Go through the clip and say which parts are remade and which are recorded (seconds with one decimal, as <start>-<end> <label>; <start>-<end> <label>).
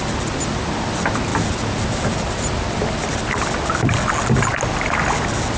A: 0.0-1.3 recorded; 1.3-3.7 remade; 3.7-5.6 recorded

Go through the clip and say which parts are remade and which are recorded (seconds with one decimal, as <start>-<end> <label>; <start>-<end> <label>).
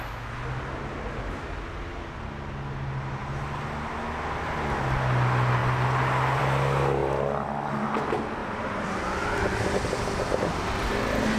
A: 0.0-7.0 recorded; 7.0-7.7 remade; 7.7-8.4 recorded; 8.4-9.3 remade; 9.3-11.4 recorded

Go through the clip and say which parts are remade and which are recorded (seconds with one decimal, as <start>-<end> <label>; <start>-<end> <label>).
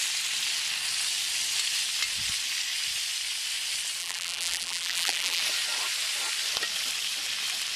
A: 0.0-4.0 recorded; 4.0-5.4 remade; 5.4-7.8 recorded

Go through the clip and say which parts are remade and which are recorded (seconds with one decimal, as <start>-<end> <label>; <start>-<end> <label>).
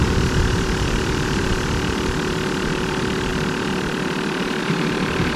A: 0.0-1.5 remade; 1.5-2.7 recorded; 2.7-3.3 remade; 3.3-4.6 recorded; 4.6-5.4 remade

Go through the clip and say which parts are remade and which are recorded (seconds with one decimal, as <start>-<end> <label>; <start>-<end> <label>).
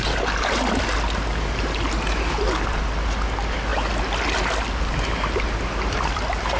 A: 0.0-6.6 recorded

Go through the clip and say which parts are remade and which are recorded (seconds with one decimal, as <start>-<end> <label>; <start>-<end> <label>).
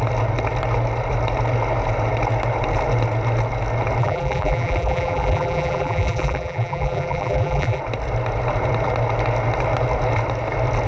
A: 0.0-4.0 recorded; 4.0-7.8 remade; 7.8-10.9 recorded